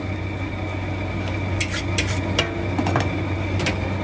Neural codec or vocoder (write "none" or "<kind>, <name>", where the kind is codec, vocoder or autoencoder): none